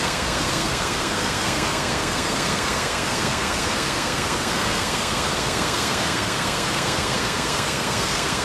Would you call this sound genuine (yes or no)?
no